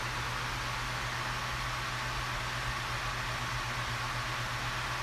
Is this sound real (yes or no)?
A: yes